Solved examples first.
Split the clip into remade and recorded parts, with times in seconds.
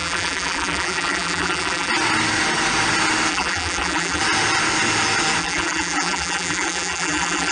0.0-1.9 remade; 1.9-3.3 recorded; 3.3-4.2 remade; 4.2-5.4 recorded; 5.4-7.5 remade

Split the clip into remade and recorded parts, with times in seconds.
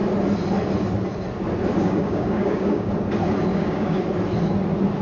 0.0-1.8 recorded; 1.8-2.9 remade; 2.9-3.5 recorded; 3.5-4.0 remade; 4.0-5.0 recorded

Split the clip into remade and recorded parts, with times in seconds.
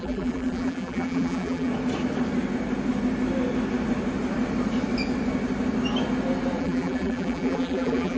0.0-1.7 remade; 1.7-6.6 recorded; 6.6-8.2 remade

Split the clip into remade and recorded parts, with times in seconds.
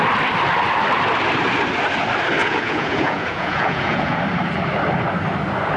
0.0-2.4 recorded; 2.4-4.2 remade; 4.2-5.8 recorded